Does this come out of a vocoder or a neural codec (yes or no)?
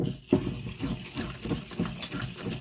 no